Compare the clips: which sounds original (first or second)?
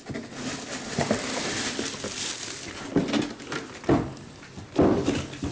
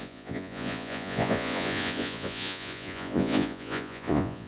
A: first